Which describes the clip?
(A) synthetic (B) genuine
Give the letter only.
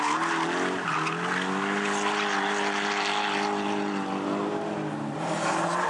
B